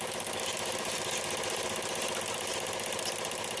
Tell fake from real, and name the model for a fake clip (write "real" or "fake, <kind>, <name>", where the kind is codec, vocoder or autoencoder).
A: real